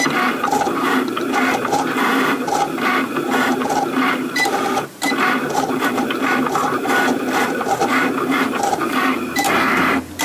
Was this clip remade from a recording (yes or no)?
yes